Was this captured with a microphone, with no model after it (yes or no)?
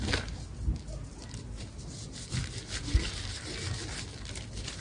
yes